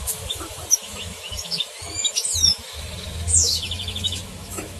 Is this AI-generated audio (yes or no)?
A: yes